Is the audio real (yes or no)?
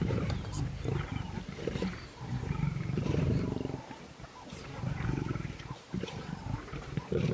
no